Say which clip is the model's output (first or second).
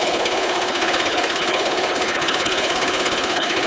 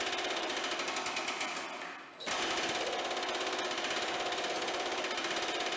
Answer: first